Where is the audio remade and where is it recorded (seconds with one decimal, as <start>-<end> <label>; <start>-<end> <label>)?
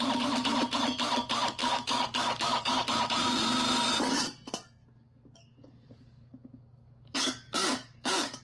0.0-1.6 recorded; 1.6-2.9 remade; 2.9-4.8 recorded; 4.8-8.4 remade